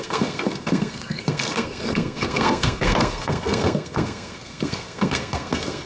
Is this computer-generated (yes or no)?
yes